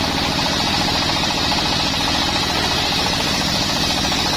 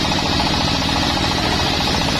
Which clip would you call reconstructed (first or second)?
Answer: second